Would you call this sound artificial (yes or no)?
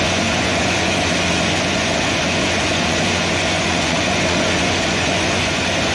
yes